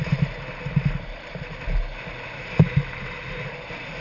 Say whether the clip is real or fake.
real